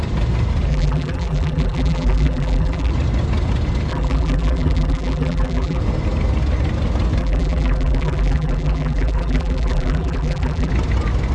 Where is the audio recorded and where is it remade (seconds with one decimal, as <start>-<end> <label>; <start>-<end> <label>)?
0.0-0.7 recorded; 0.7-2.9 remade; 2.9-3.9 recorded; 3.9-5.8 remade; 5.8-7.2 recorded; 7.2-10.7 remade; 10.7-11.3 recorded